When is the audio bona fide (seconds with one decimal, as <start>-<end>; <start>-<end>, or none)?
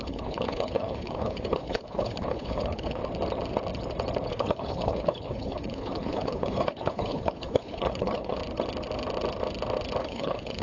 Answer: 3.0-4.3; 8.4-10.0